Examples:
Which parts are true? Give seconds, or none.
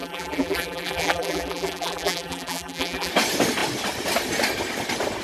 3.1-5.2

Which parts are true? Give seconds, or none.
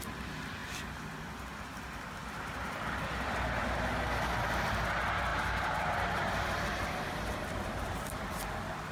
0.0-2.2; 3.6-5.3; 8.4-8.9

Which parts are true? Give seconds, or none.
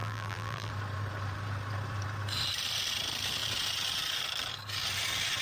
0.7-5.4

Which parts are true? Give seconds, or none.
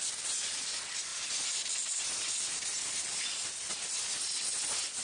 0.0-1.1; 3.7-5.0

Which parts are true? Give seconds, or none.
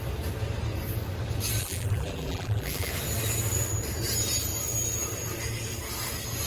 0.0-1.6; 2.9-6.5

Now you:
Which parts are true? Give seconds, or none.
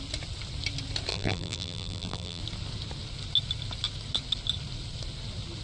0.0-1.1; 2.4-5.6